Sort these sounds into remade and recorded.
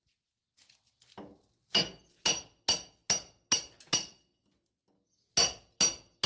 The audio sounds recorded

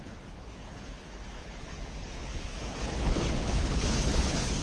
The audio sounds remade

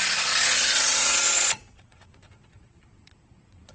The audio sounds remade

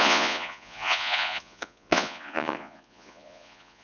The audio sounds remade